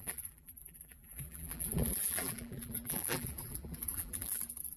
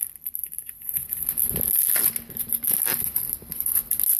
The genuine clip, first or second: second